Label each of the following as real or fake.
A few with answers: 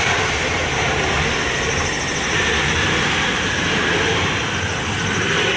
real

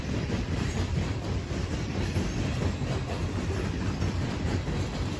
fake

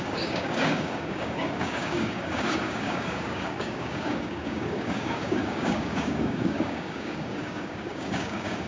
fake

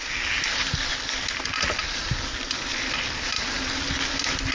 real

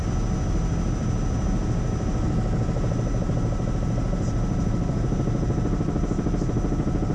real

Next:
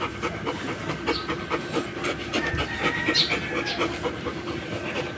real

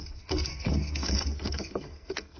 fake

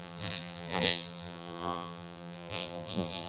fake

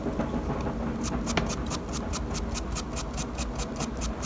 real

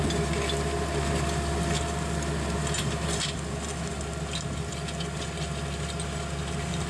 real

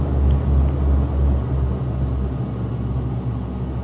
real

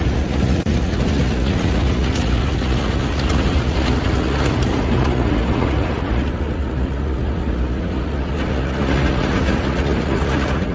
fake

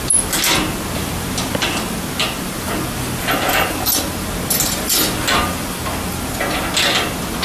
real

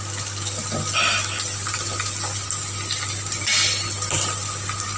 real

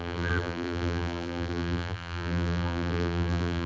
fake